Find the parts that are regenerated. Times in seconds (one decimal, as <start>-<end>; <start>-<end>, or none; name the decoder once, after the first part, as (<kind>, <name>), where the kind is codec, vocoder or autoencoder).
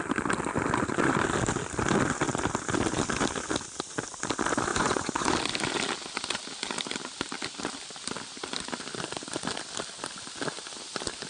4.7-5.3 (vocoder, Vocos)